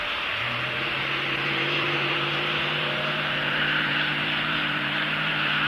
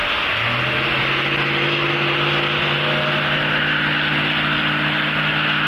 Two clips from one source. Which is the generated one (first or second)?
first